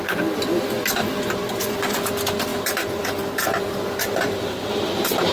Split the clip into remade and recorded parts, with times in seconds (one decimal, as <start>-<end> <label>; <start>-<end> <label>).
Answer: 0.0-1.4 recorded; 1.4-2.1 remade; 2.1-2.5 recorded; 2.5-5.3 remade

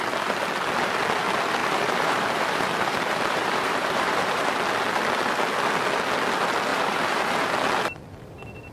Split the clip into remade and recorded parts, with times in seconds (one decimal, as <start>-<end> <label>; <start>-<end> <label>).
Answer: 0.0-1.6 recorded; 1.6-4.5 remade; 4.5-6.7 recorded; 6.7-7.5 remade; 7.5-8.7 recorded

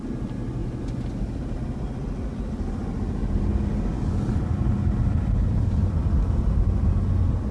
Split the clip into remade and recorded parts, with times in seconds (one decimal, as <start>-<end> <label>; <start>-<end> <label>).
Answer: 0.0-7.5 recorded

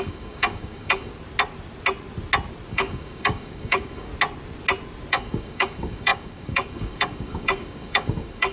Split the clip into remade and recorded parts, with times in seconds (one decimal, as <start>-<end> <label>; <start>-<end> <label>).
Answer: 0.0-1.1 remade; 1.1-2.7 recorded; 2.7-4.1 remade; 4.1-5.1 recorded; 5.1-8.5 remade

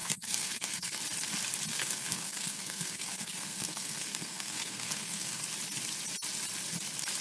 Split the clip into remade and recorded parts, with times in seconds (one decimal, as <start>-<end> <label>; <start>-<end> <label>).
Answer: 0.0-1.0 remade; 1.0-1.7 recorded; 1.7-5.4 remade; 5.4-7.2 recorded

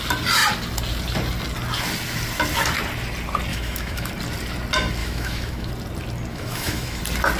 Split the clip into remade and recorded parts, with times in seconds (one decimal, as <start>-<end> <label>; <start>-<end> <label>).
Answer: 0.0-3.5 recorded; 3.5-4.1 remade; 4.1-5.0 recorded; 5.0-5.7 remade; 5.7-6.3 recorded; 6.3-7.0 remade; 7.0-7.4 recorded

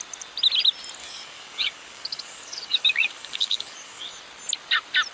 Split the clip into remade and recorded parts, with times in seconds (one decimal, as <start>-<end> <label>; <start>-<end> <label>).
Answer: 0.0-1.0 recorded; 1.0-4.1 remade; 4.1-5.1 recorded

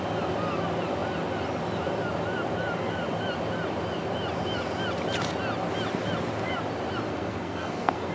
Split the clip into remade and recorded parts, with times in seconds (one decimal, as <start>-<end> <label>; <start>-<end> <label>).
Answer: 0.0-7.1 recorded; 7.1-8.1 remade